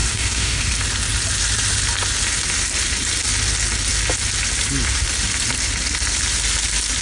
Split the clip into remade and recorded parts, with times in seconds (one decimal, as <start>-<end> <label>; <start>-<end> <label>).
0.0-0.6 remade; 0.6-7.0 recorded